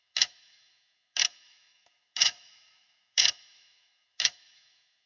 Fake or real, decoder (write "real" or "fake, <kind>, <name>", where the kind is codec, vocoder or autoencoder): fake, autoencoder, DAC-VAE